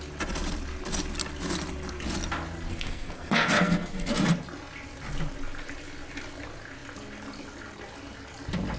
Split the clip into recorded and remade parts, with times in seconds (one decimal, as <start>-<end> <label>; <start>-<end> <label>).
0.0-2.7 recorded; 2.7-4.1 remade; 4.1-8.8 recorded